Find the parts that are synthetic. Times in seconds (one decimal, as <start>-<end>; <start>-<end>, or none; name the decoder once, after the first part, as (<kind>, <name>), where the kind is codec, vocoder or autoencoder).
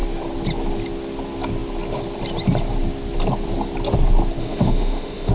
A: 4.4-5.3 (autoencoder, DAC-VAE)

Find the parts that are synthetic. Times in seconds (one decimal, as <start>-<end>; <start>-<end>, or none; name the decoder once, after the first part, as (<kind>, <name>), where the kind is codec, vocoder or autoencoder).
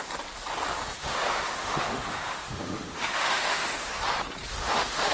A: 1.0-3.9 (autoencoder, DAC-VAE); 4.5-5.1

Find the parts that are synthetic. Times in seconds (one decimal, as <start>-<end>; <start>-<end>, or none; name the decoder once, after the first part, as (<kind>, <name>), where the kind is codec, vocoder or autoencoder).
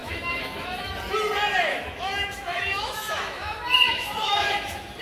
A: 0.0-0.9 (autoencoder, DAC-VAE); 1.7-5.0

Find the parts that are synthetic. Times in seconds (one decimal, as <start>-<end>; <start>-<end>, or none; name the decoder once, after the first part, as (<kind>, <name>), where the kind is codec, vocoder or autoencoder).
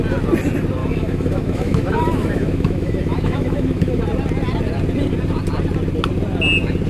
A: 0.8-4.0 (autoencoder, DAC-VAE)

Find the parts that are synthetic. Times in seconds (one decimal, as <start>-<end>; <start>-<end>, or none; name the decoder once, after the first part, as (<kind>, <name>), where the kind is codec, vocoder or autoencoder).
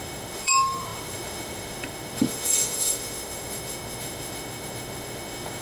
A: 0.0-5.6 (autoencoder, DAC-VAE)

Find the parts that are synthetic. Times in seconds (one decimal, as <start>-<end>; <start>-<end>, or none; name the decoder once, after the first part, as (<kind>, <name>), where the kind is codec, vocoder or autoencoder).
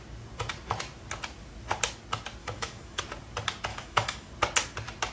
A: 2.4-3.0 (autoencoder, DAC-VAE); 3.7-4.3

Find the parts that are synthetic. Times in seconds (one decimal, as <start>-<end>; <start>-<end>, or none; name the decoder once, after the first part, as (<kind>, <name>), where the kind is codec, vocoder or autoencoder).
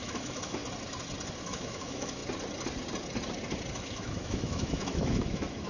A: 0.0-0.6 (autoencoder, DAC-VAE); 1.4-2.2; 3.7-5.7